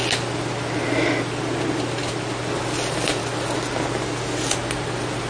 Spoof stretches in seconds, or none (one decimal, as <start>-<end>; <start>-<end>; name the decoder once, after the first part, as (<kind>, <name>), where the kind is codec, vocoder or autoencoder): none